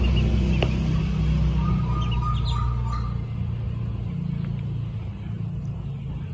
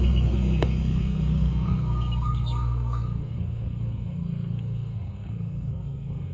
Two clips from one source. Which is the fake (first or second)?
second